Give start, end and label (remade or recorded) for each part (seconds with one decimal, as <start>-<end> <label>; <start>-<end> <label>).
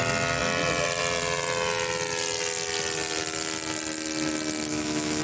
0.0-4.7 recorded; 4.7-5.2 remade